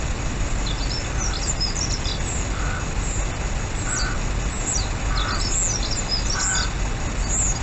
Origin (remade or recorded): recorded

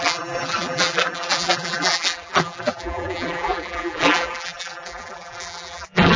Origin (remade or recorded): remade